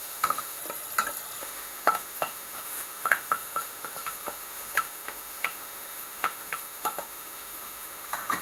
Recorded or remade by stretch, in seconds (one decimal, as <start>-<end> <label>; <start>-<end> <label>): 0.0-0.6 remade; 0.6-1.4 recorded; 1.4-8.4 remade